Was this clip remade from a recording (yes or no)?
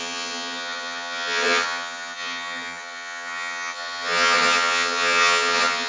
yes